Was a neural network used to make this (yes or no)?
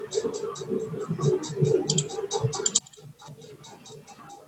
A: no